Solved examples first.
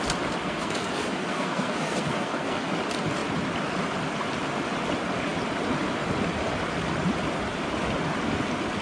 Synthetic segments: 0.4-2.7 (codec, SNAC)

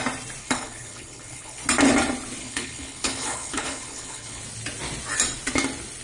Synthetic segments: 0.4-1.6 (codec, HILCodec); 2.4-4.4

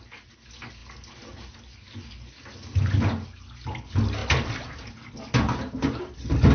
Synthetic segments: none

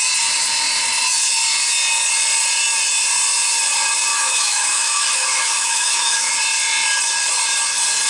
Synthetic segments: 4.1-6.3 (autoencoder, DAC-VAE)